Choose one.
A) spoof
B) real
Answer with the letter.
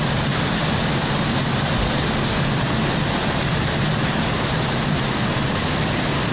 B